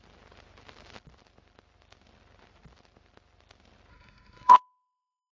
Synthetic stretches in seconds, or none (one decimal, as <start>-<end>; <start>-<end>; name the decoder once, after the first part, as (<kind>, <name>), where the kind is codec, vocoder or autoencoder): 3.9-5.3 (codec, SNAC)